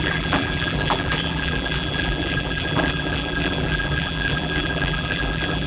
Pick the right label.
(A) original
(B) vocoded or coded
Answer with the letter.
B